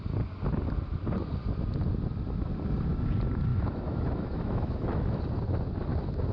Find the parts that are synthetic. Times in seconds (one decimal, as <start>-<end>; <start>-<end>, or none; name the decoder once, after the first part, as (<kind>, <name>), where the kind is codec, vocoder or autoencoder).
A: 3.5-5.2 (autoencoder, DAC-VAE)

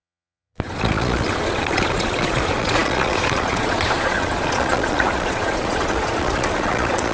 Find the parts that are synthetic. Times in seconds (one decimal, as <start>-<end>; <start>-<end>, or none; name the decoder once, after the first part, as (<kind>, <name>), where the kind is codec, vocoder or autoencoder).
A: 0.0-7.1 (vocoder, Vocos)

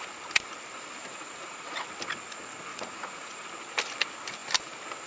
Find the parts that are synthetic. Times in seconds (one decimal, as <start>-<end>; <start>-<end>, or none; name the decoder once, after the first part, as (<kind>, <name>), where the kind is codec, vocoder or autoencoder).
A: 1.0-1.9 (vocoder, Vocos); 2.7-3.5

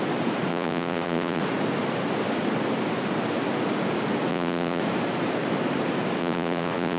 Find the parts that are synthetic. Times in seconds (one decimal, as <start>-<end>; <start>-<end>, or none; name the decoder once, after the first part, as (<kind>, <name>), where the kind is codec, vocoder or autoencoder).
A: 0.5-1.4 (vocoder, Vocos); 4.3-4.8; 6.2-7.0

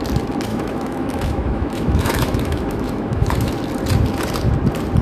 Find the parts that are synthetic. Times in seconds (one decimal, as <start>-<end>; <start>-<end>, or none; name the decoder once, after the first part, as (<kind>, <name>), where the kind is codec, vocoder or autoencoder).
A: 0.5-3.5 (autoencoder, DAC-VAE)